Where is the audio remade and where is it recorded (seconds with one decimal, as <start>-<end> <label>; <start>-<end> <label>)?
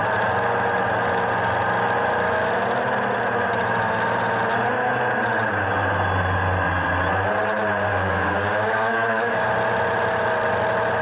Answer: 0.0-7.9 recorded; 7.9-9.5 remade; 9.5-11.0 recorded